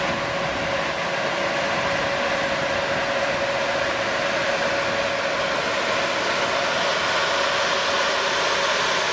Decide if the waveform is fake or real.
real